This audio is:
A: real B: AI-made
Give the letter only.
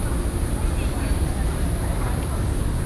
A